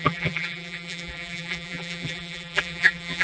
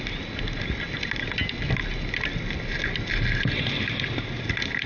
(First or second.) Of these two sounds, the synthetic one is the first